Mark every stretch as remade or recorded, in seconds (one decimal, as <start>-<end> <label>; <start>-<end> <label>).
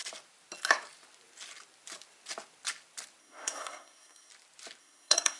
0.0-3.2 recorded; 3.2-4.3 remade; 4.3-4.8 recorded; 4.8-5.4 remade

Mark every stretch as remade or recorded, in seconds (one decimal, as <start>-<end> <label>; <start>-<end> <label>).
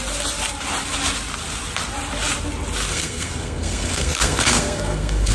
0.0-2.9 recorded; 2.9-5.3 remade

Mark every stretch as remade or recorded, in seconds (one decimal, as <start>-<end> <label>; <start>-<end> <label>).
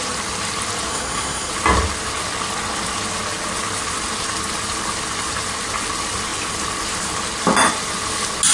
0.0-0.9 recorded; 0.9-1.5 remade; 1.5-8.5 recorded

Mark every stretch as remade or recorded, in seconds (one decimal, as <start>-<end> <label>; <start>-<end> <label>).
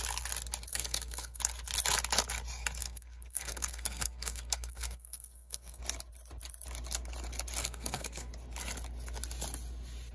0.0-0.7 recorded; 0.7-1.4 remade; 1.4-2.8 recorded; 2.8-5.8 remade; 5.8-7.6 recorded; 7.6-8.3 remade; 8.3-10.1 recorded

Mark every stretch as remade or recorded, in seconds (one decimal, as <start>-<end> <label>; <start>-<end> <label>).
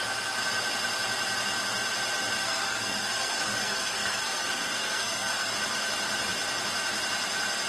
0.0-2.4 recorded; 2.4-5.5 remade; 5.5-7.7 recorded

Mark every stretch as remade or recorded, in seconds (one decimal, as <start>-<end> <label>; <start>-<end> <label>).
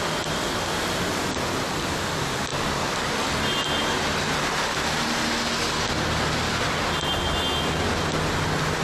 0.0-8.8 recorded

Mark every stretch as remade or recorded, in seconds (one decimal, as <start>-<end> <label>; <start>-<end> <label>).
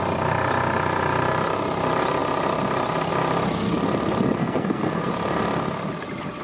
0.0-4.4 recorded; 4.4-5.1 remade; 5.1-6.4 recorded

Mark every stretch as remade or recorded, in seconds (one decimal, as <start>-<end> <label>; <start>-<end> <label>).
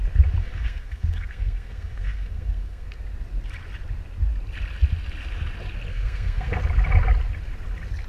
0.0-0.4 recorded; 0.4-3.0 remade; 3.0-5.9 recorded; 5.9-6.6 remade; 6.6-8.1 recorded